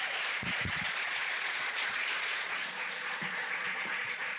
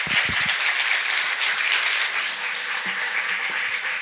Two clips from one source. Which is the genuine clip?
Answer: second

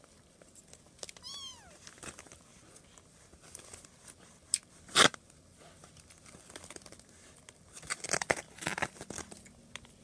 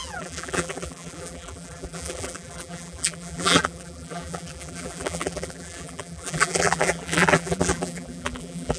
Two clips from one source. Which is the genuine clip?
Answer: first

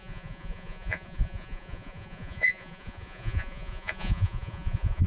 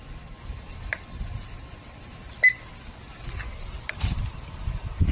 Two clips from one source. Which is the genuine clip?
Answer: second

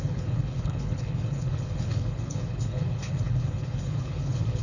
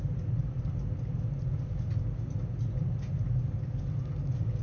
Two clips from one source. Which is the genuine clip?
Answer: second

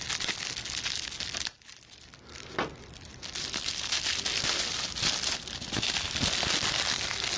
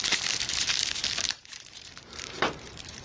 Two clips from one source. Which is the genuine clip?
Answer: first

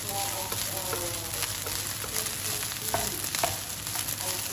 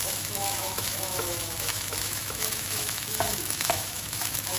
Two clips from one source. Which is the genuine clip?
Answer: first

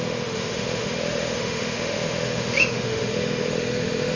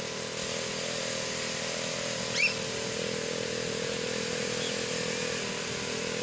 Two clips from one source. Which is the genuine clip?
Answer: second